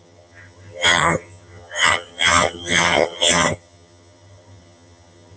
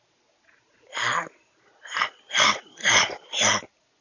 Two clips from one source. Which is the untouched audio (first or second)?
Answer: second